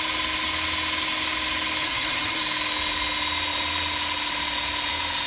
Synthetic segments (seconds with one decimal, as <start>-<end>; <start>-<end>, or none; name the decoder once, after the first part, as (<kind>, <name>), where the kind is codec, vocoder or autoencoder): 1.8-2.4 (vocoder, HiFi-GAN)